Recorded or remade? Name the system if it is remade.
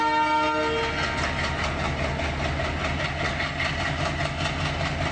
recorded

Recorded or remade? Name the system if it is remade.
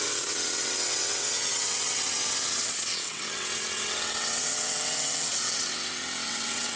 remade, vocoder, WaveNeXt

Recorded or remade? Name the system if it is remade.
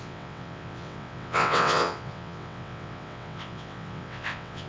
remade, vocoder, WaveNeXt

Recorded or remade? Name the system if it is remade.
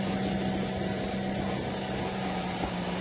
recorded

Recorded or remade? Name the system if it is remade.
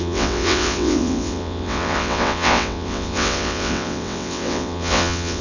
remade, vocoder, WaveNeXt